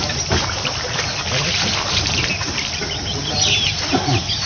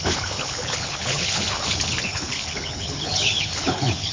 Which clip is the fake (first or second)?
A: second